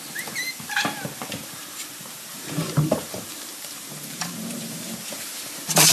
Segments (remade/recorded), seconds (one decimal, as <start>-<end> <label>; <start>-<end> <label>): 0.0-2.3 recorded; 2.3-5.9 remade